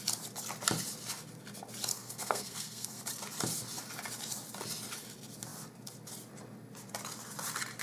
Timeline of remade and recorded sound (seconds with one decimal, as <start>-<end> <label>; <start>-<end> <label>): 0.0-1.9 recorded; 1.9-3.0 remade; 3.0-7.8 recorded